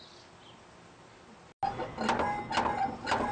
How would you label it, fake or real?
real